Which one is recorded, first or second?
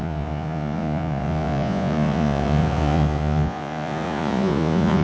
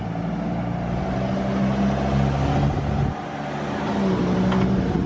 second